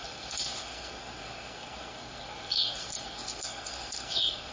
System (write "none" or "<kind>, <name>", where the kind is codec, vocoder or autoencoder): codec, SNAC